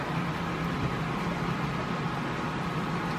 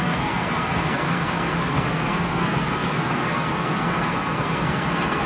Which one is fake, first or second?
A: second